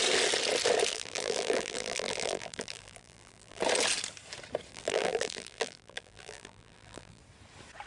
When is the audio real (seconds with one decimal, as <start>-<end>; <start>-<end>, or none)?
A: 0.0-0.9; 3.6-4.7; 7.2-7.9